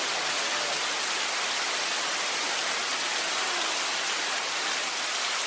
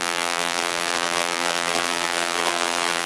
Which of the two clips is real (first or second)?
first